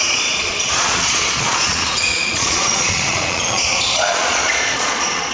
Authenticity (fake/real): fake